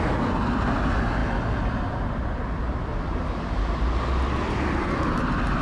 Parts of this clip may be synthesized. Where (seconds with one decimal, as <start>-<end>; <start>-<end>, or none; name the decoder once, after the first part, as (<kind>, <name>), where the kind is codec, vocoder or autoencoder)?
none